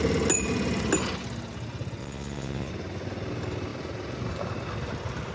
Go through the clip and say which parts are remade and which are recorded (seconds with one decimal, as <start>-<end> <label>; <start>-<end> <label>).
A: 0.0-2.0 recorded; 2.0-2.7 remade; 2.7-5.3 recorded

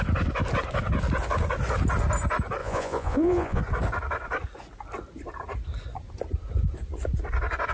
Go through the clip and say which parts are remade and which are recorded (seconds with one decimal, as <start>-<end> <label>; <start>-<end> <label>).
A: 0.0-2.6 recorded; 2.6-3.6 remade; 3.6-7.7 recorded

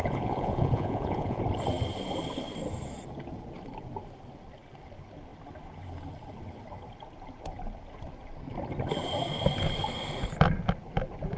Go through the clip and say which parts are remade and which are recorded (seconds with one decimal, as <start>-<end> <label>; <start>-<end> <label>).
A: 0.0-1.4 remade; 1.4-11.4 recorded

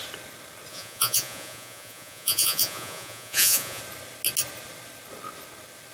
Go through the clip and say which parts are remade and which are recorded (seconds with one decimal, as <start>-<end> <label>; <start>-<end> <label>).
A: 0.0-0.7 recorded; 0.7-3.8 remade; 3.8-5.9 recorded

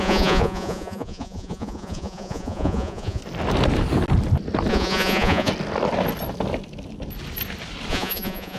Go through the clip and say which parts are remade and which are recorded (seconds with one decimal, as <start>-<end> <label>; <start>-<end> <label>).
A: 0.0-3.2 remade; 3.2-4.7 recorded; 4.7-5.5 remade; 5.5-7.9 recorded; 7.9-8.6 remade

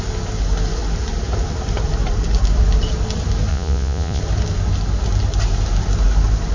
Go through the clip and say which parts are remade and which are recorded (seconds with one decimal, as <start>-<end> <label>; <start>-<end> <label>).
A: 0.0-3.5 recorded; 3.5-4.2 remade; 4.2-6.5 recorded

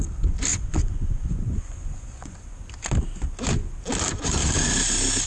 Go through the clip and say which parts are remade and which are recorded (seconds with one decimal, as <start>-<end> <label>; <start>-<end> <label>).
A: 0.0-0.5 recorded; 0.5-2.6 remade; 2.6-5.3 recorded

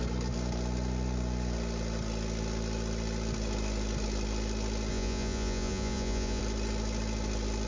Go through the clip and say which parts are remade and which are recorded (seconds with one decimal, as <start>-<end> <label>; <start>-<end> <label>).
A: 0.0-4.9 recorded; 4.9-6.4 remade; 6.4-7.7 recorded